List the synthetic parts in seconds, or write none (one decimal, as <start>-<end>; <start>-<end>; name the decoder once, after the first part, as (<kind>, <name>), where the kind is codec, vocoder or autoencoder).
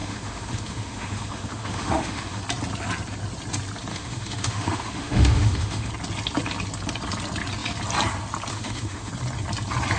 0.0-2.4 (autoencoder, DAC-VAE); 3.9-5.9; 8.5-9.1